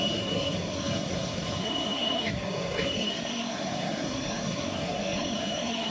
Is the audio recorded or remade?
remade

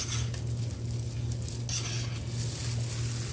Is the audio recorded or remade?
recorded